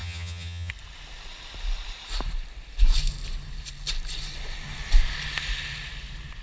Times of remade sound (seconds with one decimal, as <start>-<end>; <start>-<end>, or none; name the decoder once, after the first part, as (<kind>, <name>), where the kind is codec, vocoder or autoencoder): 0.0-0.7 (vocoder, HiFi-GAN)